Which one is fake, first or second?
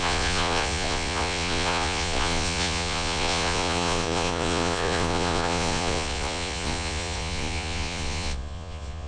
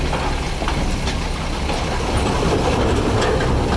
first